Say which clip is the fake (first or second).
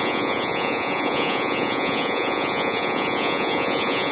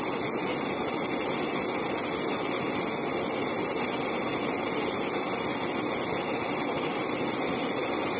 first